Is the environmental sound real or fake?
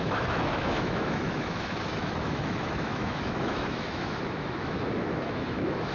fake